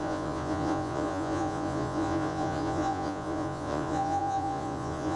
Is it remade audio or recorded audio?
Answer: remade